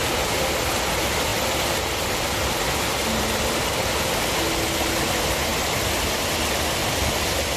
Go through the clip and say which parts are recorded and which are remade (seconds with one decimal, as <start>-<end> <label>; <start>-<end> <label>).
0.0-7.6 recorded